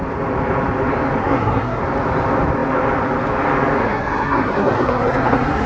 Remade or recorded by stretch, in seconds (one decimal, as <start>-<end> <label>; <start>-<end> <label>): 0.0-1.2 recorded; 1.2-1.8 remade; 1.8-3.8 recorded; 3.8-5.7 remade